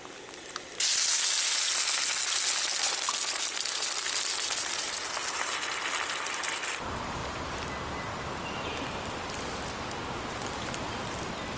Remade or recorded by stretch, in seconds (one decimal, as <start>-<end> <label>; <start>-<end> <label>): 0.0-11.6 recorded